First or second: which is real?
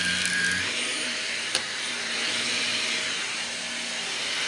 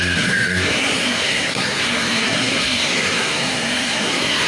first